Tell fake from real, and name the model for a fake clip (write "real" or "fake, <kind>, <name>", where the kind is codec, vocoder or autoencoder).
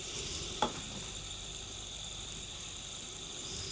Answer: fake, vocoder, BigVGAN v2